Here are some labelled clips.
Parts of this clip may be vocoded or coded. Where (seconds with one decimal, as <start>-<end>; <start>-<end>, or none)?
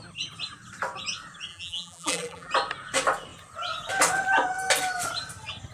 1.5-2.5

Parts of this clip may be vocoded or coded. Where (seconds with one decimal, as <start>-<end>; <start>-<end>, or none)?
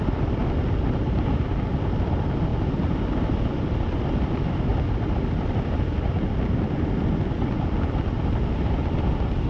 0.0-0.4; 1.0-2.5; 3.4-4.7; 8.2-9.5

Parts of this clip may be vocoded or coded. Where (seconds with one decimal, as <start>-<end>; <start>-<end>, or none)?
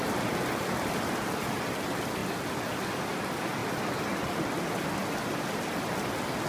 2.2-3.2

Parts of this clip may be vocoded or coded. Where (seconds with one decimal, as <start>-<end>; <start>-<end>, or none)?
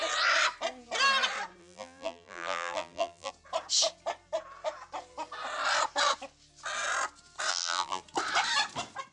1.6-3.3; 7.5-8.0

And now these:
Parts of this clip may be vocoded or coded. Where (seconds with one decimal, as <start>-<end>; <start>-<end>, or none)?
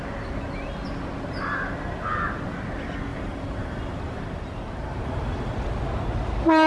3.1-5.3